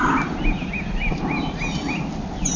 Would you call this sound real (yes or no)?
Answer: yes